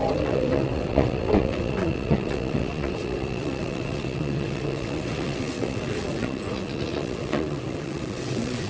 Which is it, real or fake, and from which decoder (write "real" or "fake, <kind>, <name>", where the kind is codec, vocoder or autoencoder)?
fake, vocoder, WaveNeXt